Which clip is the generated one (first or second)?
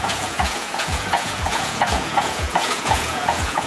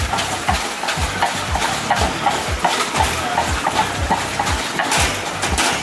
first